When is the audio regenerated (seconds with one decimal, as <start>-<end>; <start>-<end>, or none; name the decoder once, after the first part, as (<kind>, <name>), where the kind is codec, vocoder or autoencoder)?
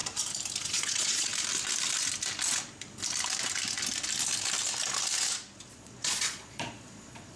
0.6-1.3 (vocoder, Vocos); 5.7-7.4